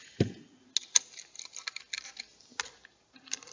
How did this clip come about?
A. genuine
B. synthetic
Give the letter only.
A